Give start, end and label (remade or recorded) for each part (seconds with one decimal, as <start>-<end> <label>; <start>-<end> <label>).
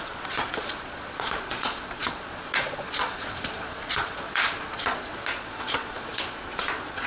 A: 0.0-7.1 remade